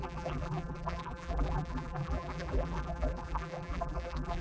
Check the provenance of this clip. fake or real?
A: fake